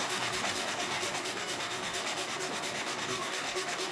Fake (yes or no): yes